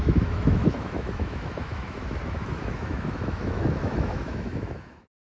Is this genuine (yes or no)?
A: no